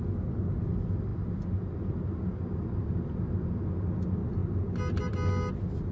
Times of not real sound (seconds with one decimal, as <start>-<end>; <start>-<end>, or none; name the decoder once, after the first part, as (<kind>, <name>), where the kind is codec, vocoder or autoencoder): none